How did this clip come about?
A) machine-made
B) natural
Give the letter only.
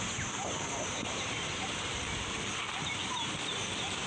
B